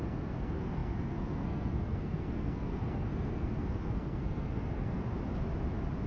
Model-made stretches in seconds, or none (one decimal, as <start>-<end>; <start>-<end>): 0.0-5.0